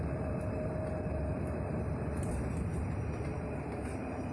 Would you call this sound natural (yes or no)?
no